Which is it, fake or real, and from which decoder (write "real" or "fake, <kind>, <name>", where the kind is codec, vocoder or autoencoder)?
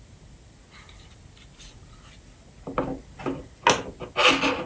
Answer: real